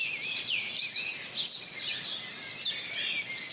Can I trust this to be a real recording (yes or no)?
yes